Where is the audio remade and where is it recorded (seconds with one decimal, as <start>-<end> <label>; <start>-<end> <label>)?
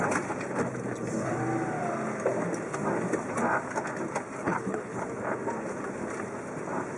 0.0-4.4 recorded; 4.4-5.0 remade; 5.0-7.0 recorded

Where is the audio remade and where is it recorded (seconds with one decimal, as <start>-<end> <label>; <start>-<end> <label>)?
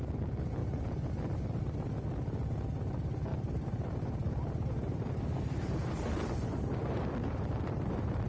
0.0-0.6 recorded; 0.6-1.1 remade; 1.1-3.3 recorded; 3.3-6.1 remade; 6.1-6.8 recorded; 6.8-8.3 remade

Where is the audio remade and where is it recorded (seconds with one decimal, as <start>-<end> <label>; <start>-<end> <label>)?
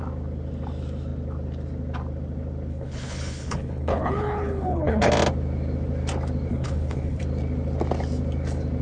0.0-2.7 recorded; 2.7-5.1 remade; 5.1-6.5 recorded; 6.5-7.2 remade; 7.2-8.8 recorded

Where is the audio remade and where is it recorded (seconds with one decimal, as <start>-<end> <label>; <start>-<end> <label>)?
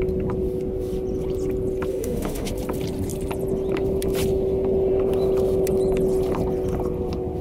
0.0-1.9 recorded; 1.9-2.5 remade; 2.5-7.4 recorded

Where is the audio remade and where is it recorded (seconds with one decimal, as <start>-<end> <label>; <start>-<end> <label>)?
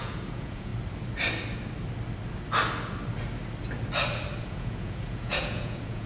0.0-0.7 remade; 0.7-4.4 recorded; 4.4-6.1 remade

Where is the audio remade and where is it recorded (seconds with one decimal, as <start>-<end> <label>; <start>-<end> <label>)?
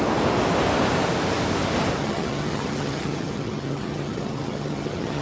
0.0-2.0 recorded; 2.0-5.2 remade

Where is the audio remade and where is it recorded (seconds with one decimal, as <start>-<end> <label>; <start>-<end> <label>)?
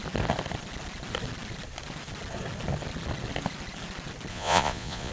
0.0-4.3 recorded; 4.3-5.1 remade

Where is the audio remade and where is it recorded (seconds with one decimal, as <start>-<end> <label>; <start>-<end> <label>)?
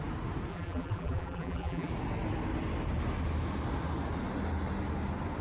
0.0-0.5 recorded; 0.5-1.9 remade; 1.9-5.4 recorded